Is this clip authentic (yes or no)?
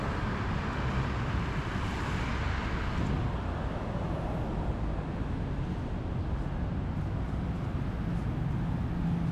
yes